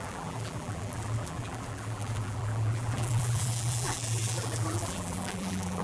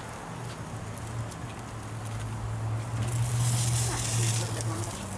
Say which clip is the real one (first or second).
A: second